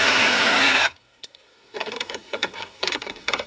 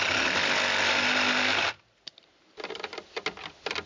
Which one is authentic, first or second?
second